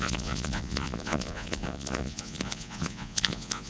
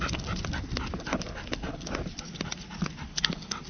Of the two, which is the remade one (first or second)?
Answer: first